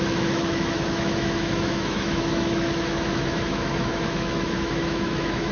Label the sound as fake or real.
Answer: fake